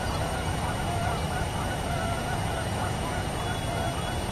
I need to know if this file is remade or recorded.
recorded